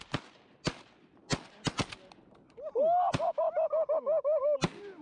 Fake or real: real